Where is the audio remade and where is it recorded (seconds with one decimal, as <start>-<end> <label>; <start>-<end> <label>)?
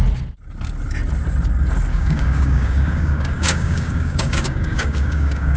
0.0-1.9 recorded; 1.9-5.6 remade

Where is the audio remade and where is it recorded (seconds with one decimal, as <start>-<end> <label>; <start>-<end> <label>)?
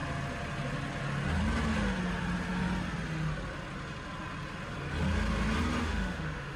0.0-5.8 recorded; 5.8-6.6 remade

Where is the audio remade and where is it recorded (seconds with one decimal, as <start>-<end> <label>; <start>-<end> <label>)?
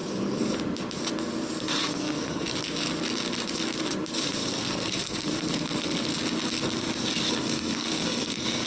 0.0-1.6 recorded; 1.6-2.5 remade; 2.5-4.5 recorded; 4.5-6.1 remade; 6.1-7.3 recorded; 7.3-8.7 remade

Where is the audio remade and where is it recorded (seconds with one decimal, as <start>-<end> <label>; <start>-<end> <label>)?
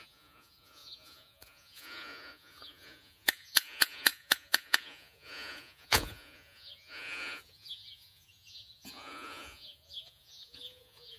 0.0-11.2 remade